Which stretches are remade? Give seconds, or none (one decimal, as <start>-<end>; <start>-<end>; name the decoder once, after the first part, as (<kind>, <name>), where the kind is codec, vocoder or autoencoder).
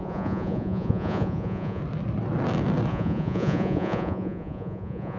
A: 0.0-1.8 (vocoder, Vocos); 2.9-5.2